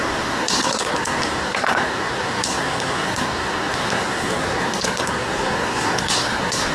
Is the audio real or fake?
fake